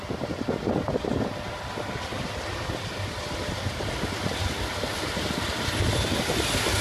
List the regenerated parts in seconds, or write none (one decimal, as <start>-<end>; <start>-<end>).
none